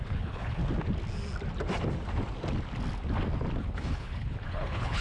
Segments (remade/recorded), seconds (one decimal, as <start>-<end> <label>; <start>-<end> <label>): 0.0-0.6 remade; 0.6-3.6 recorded; 3.6-5.0 remade